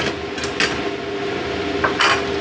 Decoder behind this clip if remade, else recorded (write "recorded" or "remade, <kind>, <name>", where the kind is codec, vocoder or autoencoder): recorded